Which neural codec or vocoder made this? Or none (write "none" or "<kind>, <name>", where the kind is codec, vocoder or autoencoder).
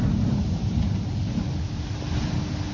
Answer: none